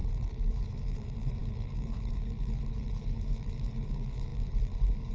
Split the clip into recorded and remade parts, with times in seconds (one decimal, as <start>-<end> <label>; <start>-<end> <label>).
0.0-5.1 remade